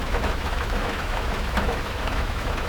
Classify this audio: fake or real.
fake